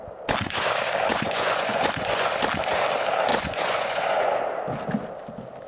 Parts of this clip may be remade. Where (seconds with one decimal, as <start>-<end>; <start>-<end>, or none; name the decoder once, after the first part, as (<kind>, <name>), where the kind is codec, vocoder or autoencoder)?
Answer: 1.1-2.3 (vocoder, Vocos); 3.3-4.4